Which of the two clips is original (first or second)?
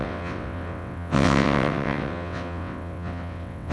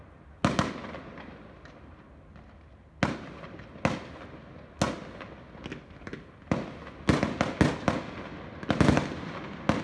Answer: second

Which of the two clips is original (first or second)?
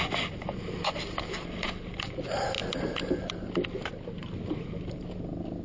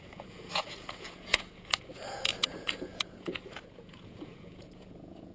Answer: first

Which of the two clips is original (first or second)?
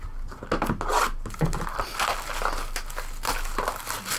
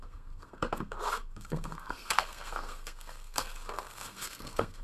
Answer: first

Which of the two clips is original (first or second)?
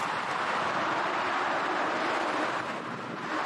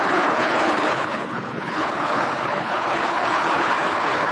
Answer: first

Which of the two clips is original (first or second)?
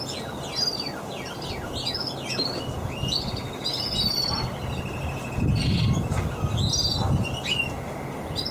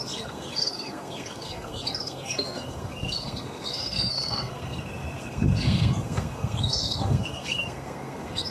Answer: first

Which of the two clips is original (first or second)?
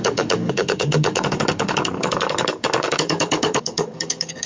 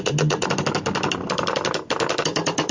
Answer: second